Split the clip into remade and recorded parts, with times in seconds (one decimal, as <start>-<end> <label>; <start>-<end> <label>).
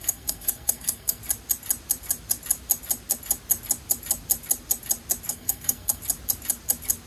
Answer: 0.0-1.2 remade; 1.2-5.3 recorded; 5.3-6.0 remade; 6.0-7.1 recorded